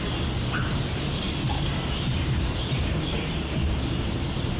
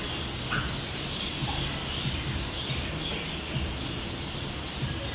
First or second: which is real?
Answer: second